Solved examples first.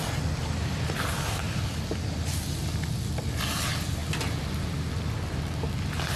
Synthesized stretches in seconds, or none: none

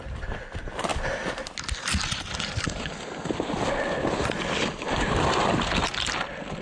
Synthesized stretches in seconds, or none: none

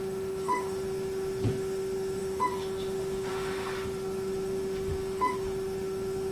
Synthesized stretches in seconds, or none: 0.0-6.3 (autoencoder, DAC-VAE)

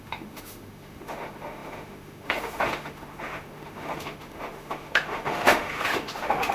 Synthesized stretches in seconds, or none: 0.0-6.5 (autoencoder, DAC-VAE)

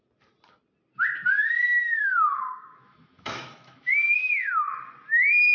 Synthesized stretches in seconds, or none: 1.4-4.7 (autoencoder, DAC-VAE)

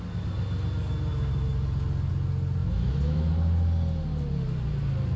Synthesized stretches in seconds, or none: 2.6-3.3 (autoencoder, DAC-VAE)

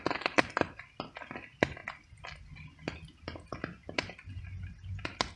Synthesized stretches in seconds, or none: none